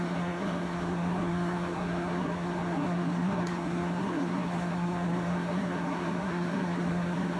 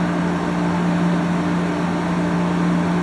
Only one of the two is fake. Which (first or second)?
first